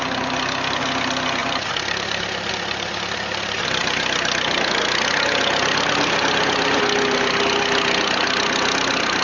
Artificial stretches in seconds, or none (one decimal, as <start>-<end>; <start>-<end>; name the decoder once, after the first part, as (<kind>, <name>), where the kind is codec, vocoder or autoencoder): none

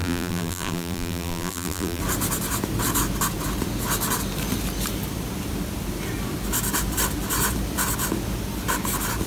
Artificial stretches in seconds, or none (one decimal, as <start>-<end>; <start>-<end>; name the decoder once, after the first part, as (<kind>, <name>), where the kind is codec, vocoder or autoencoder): 0.0-2.0 (vocoder, BigVGAN v2)

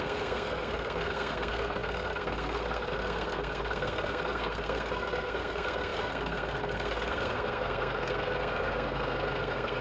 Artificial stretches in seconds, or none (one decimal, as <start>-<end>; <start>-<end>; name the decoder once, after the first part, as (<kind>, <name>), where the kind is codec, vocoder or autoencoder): 0.0-9.8 (codec, SNAC)

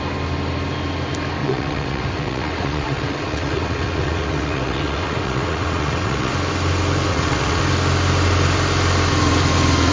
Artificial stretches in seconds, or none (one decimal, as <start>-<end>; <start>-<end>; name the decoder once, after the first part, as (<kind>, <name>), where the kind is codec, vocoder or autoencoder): 1.4-6.3 (vocoder, WaveNeXt); 7.1-7.6